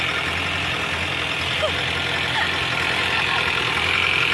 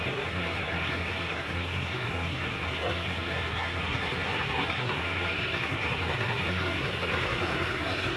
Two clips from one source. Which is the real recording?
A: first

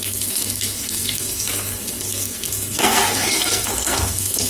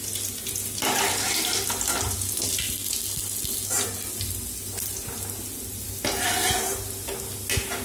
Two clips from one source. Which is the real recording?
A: second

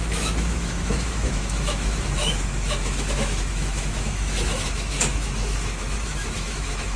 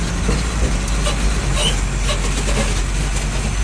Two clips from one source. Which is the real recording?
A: second